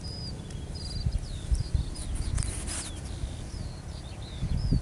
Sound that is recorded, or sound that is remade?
recorded